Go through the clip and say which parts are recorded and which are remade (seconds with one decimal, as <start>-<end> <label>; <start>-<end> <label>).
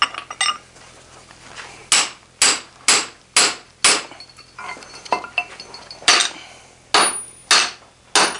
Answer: 0.0-8.4 recorded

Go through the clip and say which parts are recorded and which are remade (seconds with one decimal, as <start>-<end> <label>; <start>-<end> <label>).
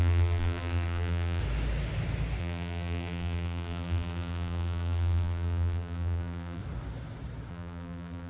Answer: 0.0-1.4 remade; 1.4-2.4 recorded; 2.4-6.6 remade; 6.6-7.5 recorded; 7.5-8.3 remade